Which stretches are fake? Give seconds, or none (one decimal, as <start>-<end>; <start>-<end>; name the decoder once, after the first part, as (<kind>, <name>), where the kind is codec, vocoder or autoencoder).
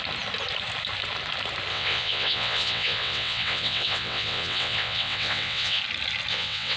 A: 1.7-5.8 (vocoder, WaveNeXt); 6.3-6.8